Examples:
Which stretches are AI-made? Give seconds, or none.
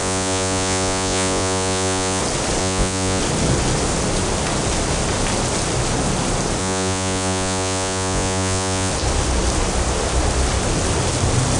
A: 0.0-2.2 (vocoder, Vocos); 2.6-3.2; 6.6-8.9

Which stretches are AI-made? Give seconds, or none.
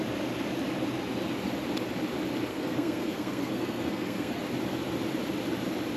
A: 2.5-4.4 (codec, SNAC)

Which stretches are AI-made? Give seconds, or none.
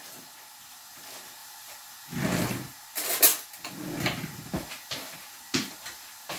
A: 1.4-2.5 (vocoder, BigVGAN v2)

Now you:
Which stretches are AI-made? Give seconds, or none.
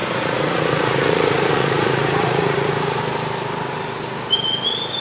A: 0.0-3.0 (vocoder, Vocos)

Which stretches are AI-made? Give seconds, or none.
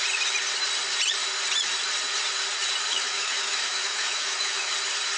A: 2.9-4.7 (autoencoder, DAC-VAE)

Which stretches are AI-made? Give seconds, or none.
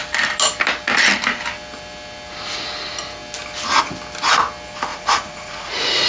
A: 4.9-6.1 (vocoder, Vocos)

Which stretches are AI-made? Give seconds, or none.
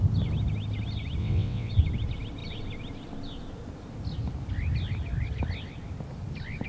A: 1.2-1.7 (vocoder, WaveNeXt)